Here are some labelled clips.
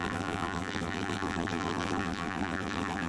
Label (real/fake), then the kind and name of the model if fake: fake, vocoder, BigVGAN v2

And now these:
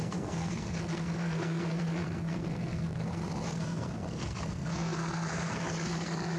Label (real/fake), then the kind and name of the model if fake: fake, codec, SNAC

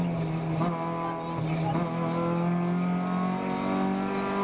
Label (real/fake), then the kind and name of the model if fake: real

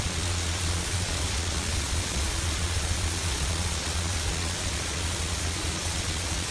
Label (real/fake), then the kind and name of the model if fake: fake, vocoder, Vocos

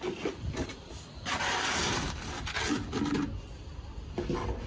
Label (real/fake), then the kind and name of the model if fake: real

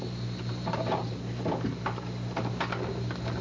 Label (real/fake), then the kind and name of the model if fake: real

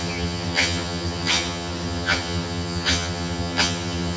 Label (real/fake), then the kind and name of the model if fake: fake, vocoder, HiFi-GAN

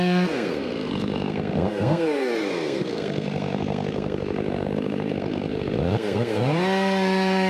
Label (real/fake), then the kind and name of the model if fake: fake, codec, SNAC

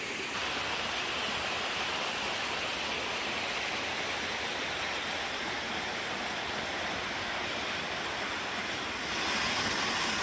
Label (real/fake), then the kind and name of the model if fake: real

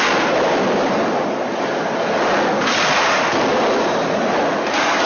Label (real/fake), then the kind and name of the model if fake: real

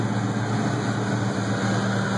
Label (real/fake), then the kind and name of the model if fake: real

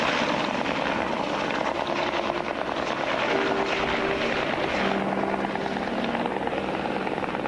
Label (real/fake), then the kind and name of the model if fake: real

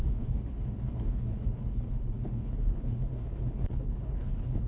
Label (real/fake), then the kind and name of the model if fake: fake, codec, HILCodec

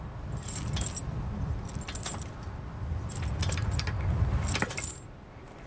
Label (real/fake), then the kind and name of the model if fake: real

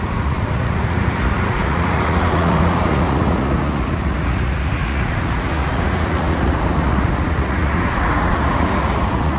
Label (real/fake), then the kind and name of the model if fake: fake, vocoder, Vocos